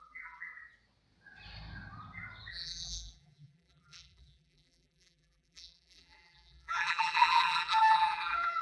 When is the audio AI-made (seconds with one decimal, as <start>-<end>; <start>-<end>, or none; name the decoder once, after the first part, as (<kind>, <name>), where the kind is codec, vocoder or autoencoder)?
0.0-0.5 (vocoder, BigVGAN v2); 2.5-8.6